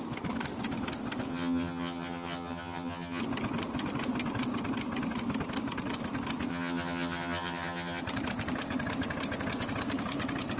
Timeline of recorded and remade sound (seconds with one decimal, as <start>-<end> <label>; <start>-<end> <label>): 0.0-1.3 recorded; 1.3-3.2 remade; 3.2-6.5 recorded; 6.5-8.0 remade; 8.0-10.6 recorded